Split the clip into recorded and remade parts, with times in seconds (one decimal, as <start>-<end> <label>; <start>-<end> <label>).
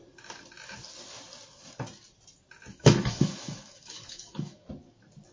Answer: 0.0-2.7 recorded; 2.7-4.7 remade; 4.7-5.3 recorded